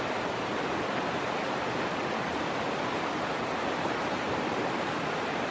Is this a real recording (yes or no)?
yes